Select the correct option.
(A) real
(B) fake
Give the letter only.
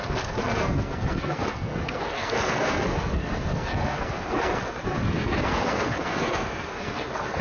B